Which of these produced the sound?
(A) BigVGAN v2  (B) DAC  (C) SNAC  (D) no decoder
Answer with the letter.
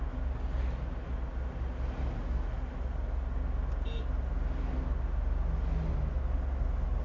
D